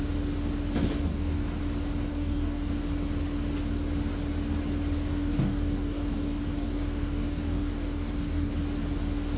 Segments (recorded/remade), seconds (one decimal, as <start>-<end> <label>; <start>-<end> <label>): 0.0-1.1 recorded; 1.1-1.6 remade; 1.6-2.1 recorded; 2.1-2.7 remade; 2.7-5.1 recorded; 5.1-8.5 remade; 8.5-9.4 recorded